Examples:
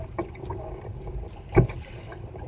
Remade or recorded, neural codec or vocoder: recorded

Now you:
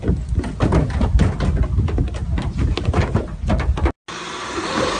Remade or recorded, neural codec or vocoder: recorded